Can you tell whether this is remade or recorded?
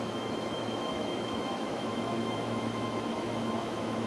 remade